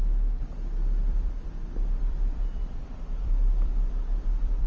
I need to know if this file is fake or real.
fake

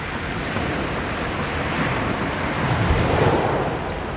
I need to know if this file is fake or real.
real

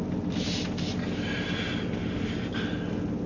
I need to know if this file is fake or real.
real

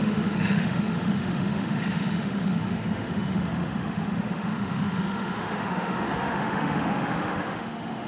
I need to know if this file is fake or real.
fake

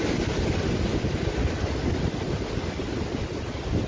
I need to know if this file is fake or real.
real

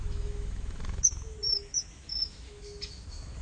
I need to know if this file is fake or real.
fake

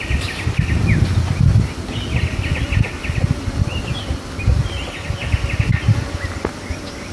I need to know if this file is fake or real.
real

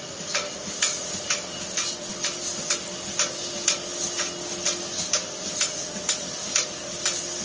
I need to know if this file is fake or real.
real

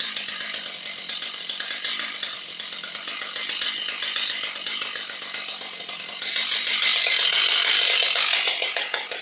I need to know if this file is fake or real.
real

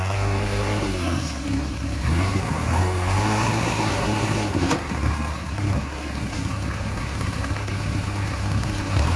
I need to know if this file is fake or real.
fake